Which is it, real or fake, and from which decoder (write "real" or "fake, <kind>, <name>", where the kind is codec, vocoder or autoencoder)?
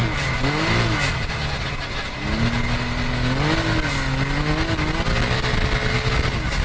real